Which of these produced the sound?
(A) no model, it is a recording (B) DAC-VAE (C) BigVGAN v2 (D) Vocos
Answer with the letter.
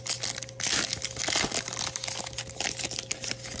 A